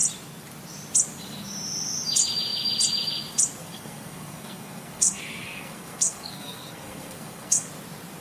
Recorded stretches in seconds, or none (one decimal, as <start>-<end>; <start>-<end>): 0.0-3.6; 7.7-8.2